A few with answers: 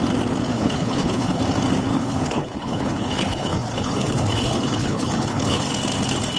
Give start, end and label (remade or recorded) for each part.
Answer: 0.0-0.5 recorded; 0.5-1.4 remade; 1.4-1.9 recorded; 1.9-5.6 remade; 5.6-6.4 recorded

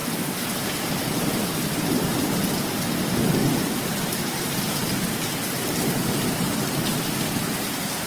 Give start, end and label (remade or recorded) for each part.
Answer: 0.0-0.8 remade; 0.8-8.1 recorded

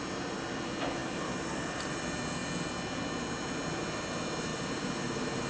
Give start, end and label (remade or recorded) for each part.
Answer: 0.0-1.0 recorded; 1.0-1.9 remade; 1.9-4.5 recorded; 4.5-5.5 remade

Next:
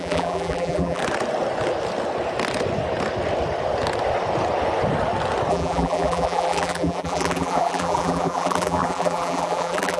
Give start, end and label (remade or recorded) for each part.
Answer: 0.0-1.0 remade; 1.0-5.5 recorded; 5.5-10.0 remade